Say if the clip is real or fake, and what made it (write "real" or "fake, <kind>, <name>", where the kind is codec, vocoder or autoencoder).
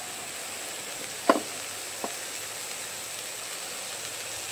real